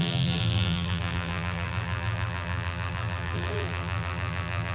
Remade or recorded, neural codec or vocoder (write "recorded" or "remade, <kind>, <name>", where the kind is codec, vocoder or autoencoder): remade, vocoder, BigVGAN v2